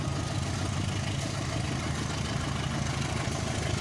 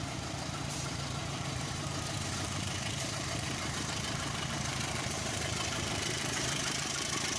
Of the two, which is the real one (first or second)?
first